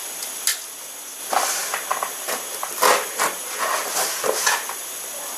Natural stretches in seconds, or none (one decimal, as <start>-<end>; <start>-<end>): 0.0-0.5; 1.2-5.4